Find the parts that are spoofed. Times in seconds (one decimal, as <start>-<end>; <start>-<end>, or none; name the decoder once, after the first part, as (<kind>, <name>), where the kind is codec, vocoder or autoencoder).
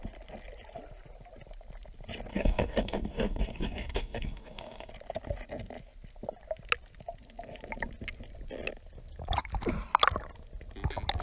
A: 2.3-4.9 (codec, DAC)